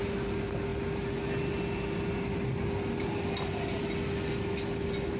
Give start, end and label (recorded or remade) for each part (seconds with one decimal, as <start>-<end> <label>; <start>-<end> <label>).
0.0-5.2 recorded

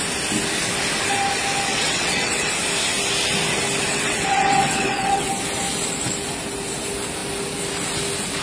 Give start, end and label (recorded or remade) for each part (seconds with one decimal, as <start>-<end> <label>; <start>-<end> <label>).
0.0-1.7 recorded; 1.7-2.5 remade; 2.5-3.9 recorded; 3.9-5.3 remade; 5.3-8.4 recorded

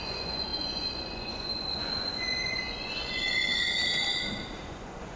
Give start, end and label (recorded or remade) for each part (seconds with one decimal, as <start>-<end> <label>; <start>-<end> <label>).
0.0-3.8 remade; 3.8-4.6 recorded; 4.6-5.2 remade